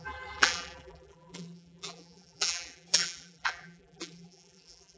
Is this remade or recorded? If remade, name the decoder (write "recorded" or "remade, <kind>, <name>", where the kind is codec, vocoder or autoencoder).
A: remade, vocoder, BigVGAN v2